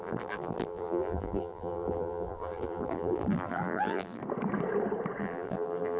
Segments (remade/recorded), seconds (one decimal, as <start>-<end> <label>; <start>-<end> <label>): 0.0-4.2 remade; 4.2-5.2 recorded; 5.2-6.0 remade